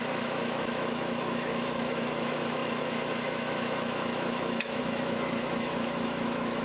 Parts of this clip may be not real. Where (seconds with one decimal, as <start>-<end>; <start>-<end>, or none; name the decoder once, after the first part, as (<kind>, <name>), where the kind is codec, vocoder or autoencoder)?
0.0-6.6 (autoencoder, DAC-VAE)